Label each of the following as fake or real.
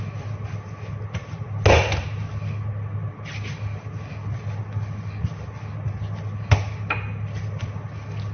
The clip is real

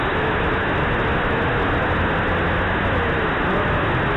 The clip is real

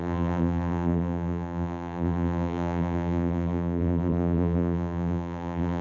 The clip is fake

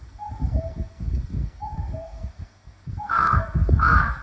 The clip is fake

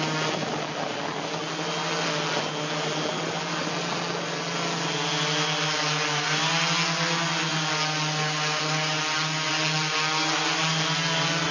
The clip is real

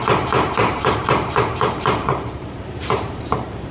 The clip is fake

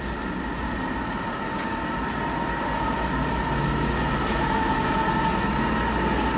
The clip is real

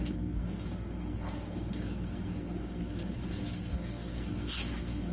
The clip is fake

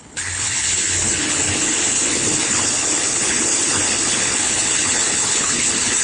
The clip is fake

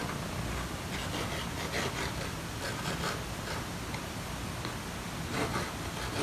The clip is real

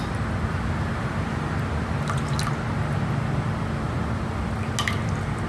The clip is real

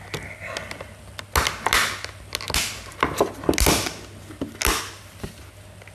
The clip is real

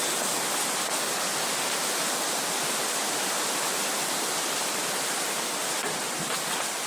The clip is real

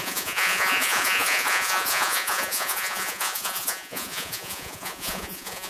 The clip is fake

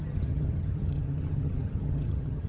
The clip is fake